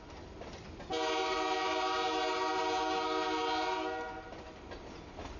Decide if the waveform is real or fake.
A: real